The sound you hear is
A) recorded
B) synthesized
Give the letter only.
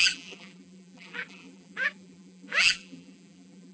B